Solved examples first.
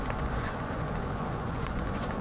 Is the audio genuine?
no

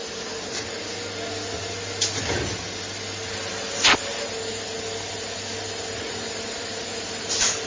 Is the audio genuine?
yes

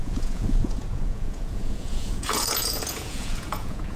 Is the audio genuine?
no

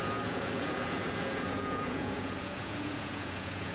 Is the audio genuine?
no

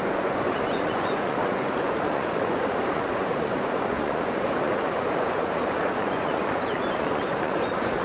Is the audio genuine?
no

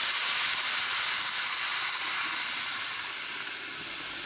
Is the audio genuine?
yes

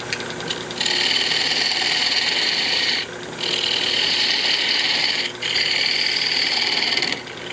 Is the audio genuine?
yes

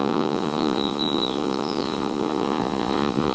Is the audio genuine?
no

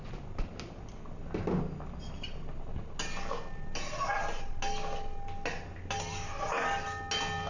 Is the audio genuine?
yes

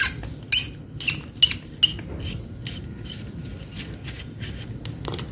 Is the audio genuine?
yes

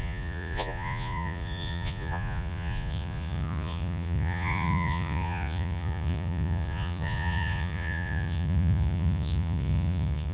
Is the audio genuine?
no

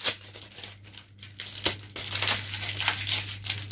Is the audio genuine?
yes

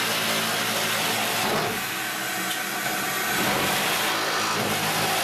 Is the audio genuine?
yes